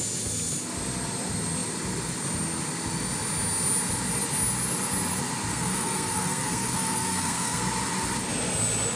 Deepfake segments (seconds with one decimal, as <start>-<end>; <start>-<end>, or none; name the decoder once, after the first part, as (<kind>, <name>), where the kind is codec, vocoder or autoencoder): 5.5-7.6 (codec, SNAC)

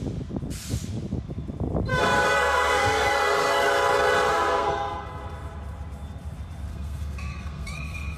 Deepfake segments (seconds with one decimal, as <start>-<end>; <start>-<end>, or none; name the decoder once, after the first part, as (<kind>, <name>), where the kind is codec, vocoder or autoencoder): 1.9-3.7 (codec, SNAC); 4.3-5.2; 6.7-8.2

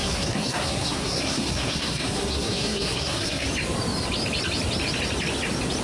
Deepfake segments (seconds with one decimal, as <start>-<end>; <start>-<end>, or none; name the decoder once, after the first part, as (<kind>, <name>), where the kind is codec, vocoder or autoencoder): 0.0-3.5 (codec, SNAC)

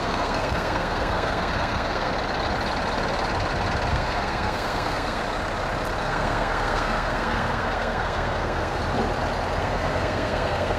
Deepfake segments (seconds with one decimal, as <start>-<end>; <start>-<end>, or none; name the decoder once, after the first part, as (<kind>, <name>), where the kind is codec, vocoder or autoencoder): 0.0-2.1 (codec, SNAC); 3.9-5.2; 6.0-8.8; 9.6-10.8

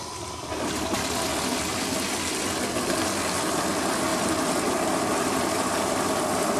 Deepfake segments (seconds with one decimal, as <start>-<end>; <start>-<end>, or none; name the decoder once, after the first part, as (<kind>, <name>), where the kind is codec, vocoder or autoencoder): none

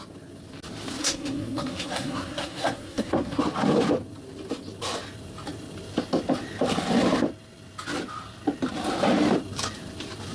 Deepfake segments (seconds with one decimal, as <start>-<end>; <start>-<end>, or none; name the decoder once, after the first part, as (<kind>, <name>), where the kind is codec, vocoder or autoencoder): 1.0-3.4 (codec, SNAC)